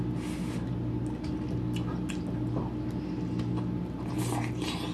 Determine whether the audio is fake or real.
real